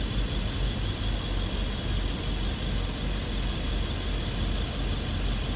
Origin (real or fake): real